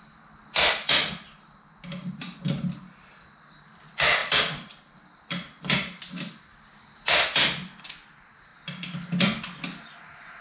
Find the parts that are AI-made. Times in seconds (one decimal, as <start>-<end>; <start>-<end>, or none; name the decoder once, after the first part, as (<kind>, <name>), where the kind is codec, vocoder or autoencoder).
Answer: none